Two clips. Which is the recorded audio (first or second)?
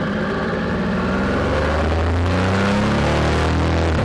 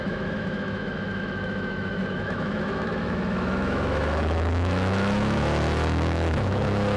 first